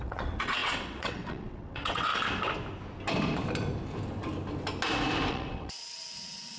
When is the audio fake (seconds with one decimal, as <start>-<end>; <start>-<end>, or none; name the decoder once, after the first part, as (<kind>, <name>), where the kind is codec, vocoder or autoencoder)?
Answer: 0.0-2.1 (vocoder, WaveNeXt); 5.3-6.6